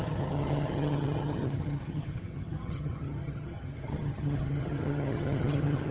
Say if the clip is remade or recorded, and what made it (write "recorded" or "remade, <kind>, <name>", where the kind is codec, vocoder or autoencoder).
remade, vocoder, HiFi-GAN